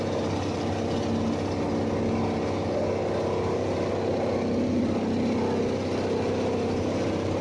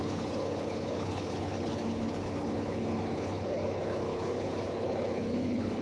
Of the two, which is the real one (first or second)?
first